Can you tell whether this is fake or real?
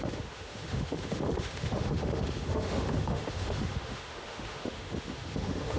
fake